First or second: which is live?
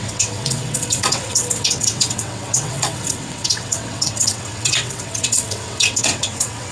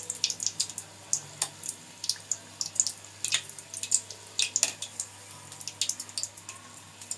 second